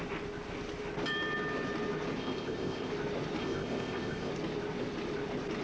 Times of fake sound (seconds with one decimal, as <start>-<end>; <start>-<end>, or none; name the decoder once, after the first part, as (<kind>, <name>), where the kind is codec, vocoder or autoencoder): 2.2-2.9 (codec, ZipCodec); 3.4-4.3